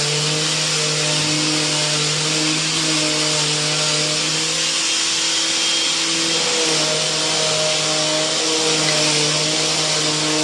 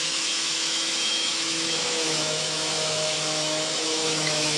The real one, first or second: first